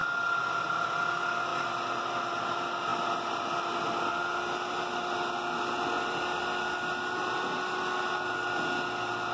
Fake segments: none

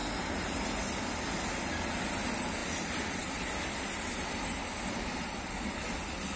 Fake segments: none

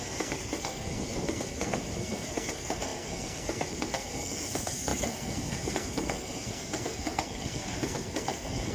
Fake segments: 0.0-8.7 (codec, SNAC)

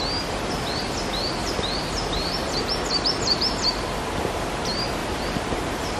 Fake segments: 1.4-3.8 (vocoder, BigVGAN v2); 5.0-6.0

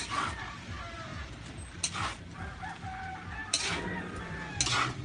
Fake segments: none